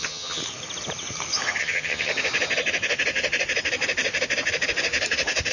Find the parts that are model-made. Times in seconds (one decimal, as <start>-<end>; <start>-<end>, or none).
0.0-0.4; 1.6-2.1